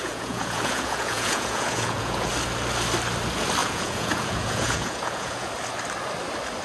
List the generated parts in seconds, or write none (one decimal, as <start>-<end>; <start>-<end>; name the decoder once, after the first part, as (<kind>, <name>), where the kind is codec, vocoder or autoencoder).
0.0-2.3 (vocoder, Vocos); 3.6-5.5